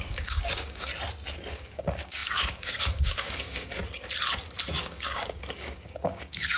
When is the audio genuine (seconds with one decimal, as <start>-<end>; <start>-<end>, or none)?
0.9-1.5; 3.8-4.8